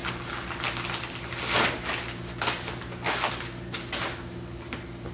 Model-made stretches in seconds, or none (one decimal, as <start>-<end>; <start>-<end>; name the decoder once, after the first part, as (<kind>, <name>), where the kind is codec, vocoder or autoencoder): none